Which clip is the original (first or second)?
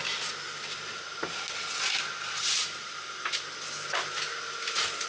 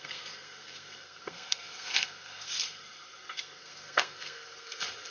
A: first